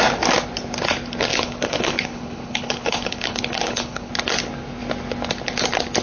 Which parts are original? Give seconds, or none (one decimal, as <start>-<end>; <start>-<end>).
0.0-1.3; 4.1-6.0